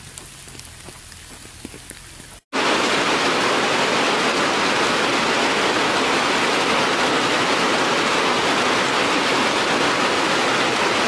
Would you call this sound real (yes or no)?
yes